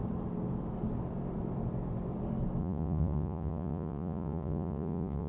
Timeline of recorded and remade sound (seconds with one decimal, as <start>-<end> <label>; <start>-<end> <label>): 0.0-2.6 recorded; 2.6-5.3 remade